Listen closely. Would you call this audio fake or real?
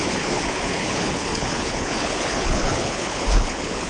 fake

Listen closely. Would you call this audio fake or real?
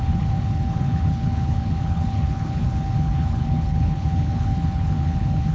fake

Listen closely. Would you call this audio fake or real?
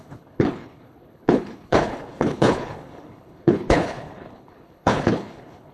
fake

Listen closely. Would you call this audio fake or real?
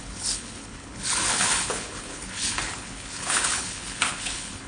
fake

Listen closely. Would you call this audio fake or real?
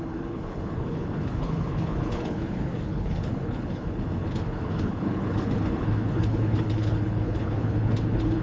fake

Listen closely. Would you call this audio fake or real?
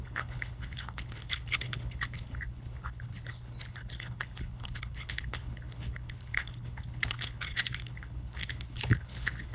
fake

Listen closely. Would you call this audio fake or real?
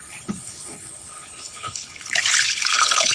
fake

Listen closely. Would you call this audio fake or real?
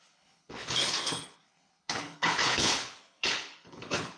fake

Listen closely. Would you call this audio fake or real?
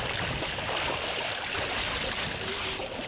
real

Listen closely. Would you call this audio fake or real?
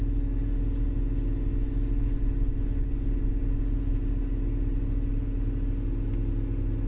real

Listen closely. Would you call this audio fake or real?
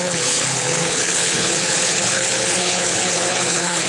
fake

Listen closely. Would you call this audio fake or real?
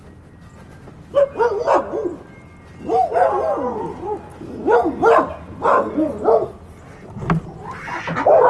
real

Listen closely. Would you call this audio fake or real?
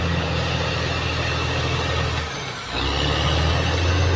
real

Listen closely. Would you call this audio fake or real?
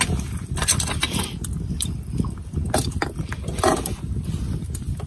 real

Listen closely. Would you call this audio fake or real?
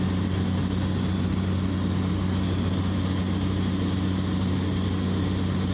real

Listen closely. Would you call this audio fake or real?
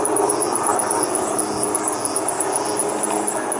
real